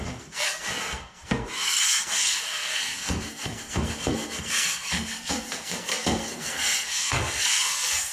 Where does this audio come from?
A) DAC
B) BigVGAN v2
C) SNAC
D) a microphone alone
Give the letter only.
C